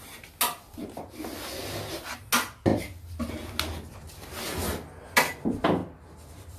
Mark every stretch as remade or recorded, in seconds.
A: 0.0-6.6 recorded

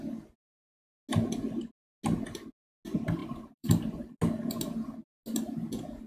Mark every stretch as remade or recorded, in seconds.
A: 0.0-3.2 recorded; 3.2-4.2 remade; 4.2-6.1 recorded

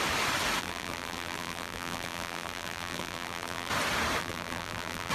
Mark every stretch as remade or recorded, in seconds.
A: 0.0-0.6 recorded; 0.6-3.7 remade; 3.7-4.2 recorded; 4.2-5.1 remade

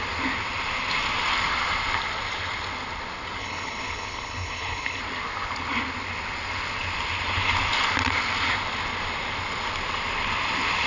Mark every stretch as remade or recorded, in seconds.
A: 0.0-3.4 recorded; 3.4-5.0 remade; 5.0-10.9 recorded

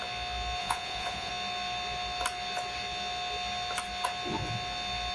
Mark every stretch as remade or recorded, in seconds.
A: 0.0-0.6 recorded; 0.6-1.3 remade; 1.3-5.1 recorded

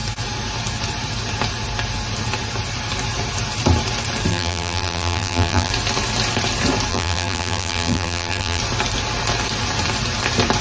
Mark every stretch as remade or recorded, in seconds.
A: 0.0-4.3 recorded; 4.3-5.7 remade; 5.7-6.9 recorded; 6.9-8.6 remade; 8.6-10.6 recorded

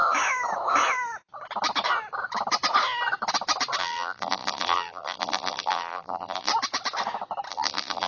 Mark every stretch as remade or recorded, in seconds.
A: 0.0-3.8 recorded; 3.8-6.5 remade; 6.5-7.5 recorded; 7.5-8.1 remade